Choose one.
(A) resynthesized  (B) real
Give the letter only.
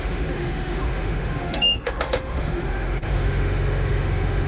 A